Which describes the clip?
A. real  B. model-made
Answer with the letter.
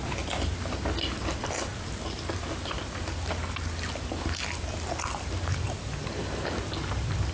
A